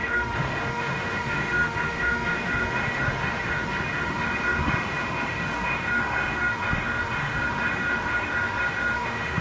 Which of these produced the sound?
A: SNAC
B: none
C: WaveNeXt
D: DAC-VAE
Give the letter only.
D